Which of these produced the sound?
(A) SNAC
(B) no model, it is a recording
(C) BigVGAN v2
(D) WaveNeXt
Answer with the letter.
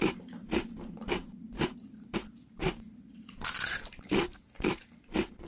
C